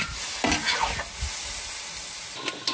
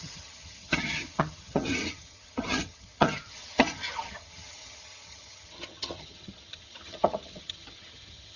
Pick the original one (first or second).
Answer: first